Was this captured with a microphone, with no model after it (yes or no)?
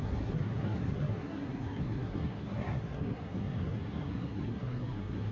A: no